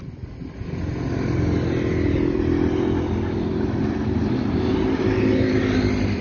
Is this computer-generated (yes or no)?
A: no